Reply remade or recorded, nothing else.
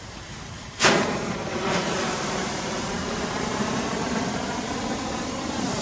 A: remade